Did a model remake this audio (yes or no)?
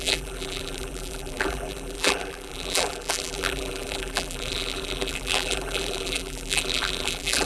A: yes